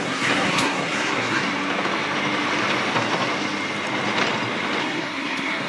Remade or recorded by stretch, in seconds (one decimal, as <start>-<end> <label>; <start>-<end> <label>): 0.0-1.4 remade; 1.4-4.8 recorded; 4.8-5.7 remade